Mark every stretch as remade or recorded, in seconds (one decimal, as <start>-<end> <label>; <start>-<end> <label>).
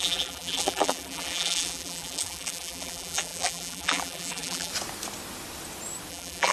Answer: 0.0-4.7 remade; 4.7-6.1 recorded; 6.1-6.5 remade